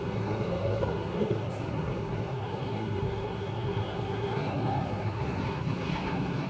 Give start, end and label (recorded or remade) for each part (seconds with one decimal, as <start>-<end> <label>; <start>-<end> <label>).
0.0-6.5 remade